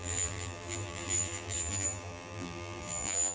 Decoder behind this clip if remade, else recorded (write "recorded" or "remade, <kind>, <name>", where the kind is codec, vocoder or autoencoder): remade, vocoder, BigVGAN v2